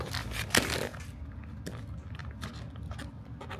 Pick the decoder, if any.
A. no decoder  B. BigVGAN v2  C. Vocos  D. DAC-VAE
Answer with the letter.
A